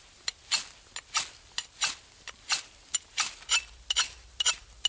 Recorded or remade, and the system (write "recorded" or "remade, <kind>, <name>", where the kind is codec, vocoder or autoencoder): recorded